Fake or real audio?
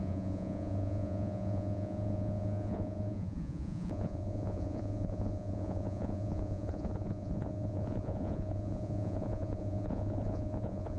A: fake